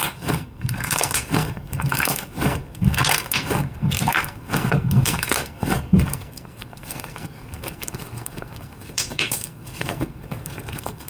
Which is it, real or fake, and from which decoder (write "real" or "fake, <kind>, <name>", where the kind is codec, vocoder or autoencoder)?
fake, codec, SNAC